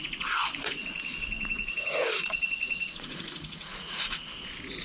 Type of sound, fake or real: fake